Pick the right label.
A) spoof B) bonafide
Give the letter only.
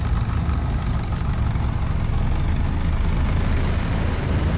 B